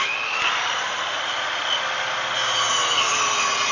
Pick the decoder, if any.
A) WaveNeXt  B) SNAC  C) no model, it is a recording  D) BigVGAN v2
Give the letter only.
C